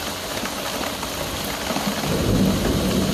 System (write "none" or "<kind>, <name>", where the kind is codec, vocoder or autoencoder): none